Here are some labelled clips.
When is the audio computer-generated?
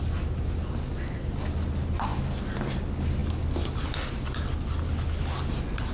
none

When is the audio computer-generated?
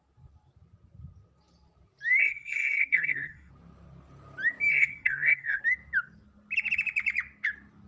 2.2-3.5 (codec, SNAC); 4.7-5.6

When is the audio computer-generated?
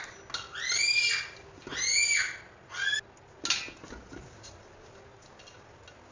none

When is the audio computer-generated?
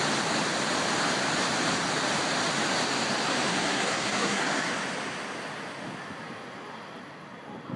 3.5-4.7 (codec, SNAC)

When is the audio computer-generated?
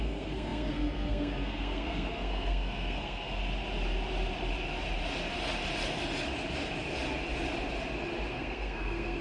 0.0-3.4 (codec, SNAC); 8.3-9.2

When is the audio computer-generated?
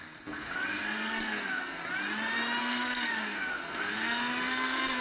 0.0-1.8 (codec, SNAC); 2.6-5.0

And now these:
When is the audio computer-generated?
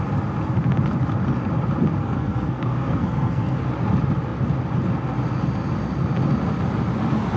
2.0-3.6 (codec, SNAC)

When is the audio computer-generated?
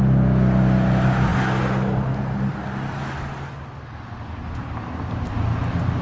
none